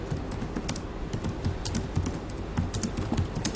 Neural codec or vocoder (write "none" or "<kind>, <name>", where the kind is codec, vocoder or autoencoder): none